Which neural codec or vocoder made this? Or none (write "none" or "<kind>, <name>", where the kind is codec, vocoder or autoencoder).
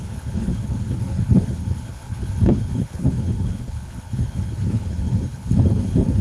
codec, HILCodec